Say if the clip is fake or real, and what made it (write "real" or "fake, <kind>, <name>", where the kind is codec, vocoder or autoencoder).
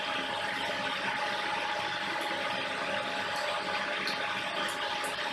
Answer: real